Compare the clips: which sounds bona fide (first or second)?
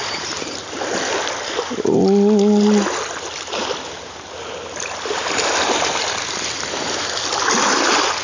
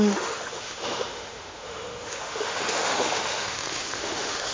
first